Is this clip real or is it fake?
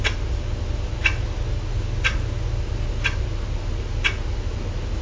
real